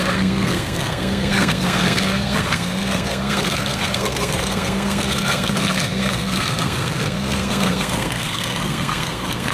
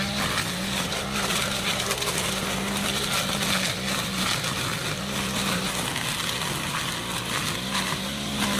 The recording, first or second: second